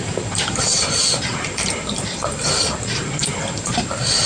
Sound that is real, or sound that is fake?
fake